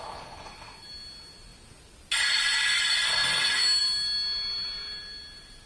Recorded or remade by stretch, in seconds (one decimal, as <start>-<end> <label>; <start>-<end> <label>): 0.0-5.7 recorded